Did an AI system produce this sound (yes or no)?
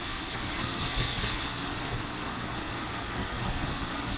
yes